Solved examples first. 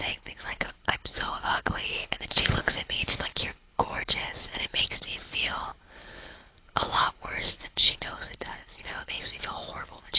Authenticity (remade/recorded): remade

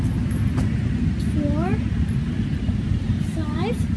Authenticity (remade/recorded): recorded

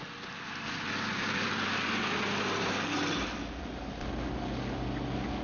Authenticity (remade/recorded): recorded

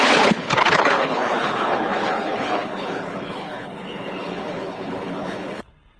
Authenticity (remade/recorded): remade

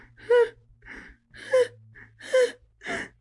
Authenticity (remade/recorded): recorded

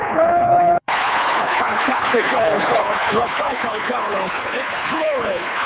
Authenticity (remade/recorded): remade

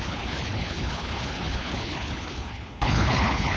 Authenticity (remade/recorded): remade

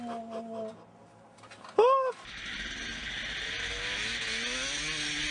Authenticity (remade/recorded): recorded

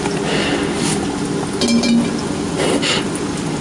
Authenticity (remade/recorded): recorded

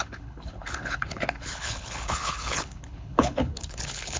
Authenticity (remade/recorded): remade